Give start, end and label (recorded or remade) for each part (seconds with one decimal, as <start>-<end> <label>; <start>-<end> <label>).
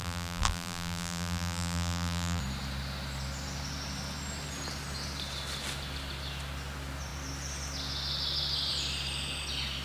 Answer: 0.0-2.4 remade; 2.4-9.8 recorded